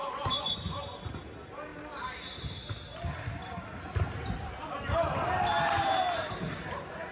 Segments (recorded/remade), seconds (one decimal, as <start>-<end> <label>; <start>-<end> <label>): 0.0-1.0 remade; 1.0-7.1 recorded